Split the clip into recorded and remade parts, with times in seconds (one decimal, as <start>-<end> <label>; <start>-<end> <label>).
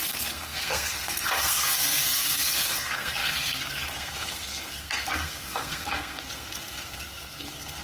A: 0.0-7.8 remade